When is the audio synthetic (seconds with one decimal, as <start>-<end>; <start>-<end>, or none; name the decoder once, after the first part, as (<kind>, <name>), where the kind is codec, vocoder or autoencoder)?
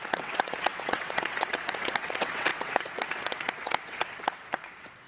0.0-5.1 (vocoder, WaveNeXt)